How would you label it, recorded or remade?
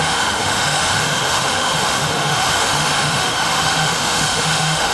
remade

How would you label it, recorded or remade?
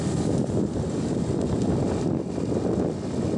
recorded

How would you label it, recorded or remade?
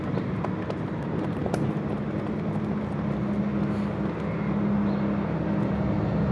recorded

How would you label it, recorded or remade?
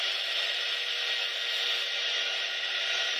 remade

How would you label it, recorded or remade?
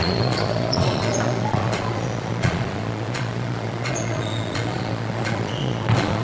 remade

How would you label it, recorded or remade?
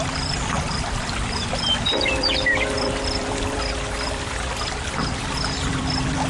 remade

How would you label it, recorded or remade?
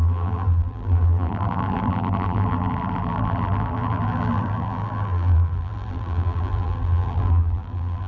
remade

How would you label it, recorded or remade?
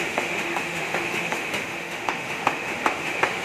remade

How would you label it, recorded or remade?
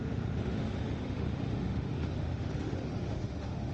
remade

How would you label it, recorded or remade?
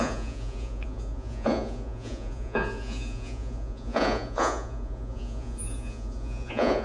remade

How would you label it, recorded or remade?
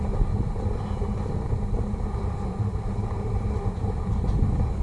remade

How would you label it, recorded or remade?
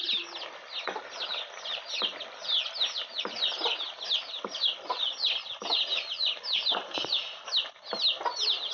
recorded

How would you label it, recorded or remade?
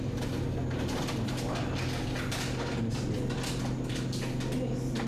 recorded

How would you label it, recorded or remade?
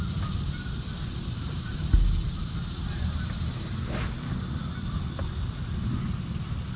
recorded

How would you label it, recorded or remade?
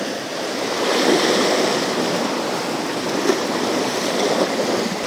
recorded